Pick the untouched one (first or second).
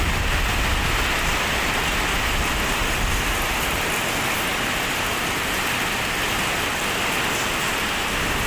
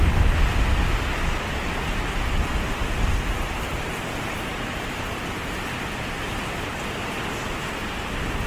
first